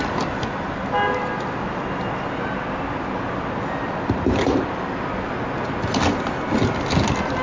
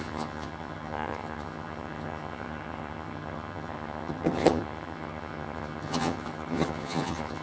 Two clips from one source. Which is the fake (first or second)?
second